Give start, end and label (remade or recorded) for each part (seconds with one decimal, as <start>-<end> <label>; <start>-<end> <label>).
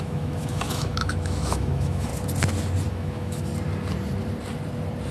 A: 0.0-2.1 remade; 2.1-2.9 recorded; 2.9-3.5 remade; 3.5-5.1 recorded